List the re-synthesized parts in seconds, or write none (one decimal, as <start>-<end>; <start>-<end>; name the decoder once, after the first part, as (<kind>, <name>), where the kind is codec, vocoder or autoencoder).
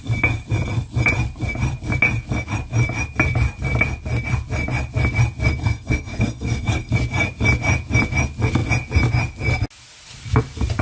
5.6-6.9 (codec, SNAC)